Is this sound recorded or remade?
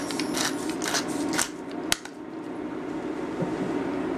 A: recorded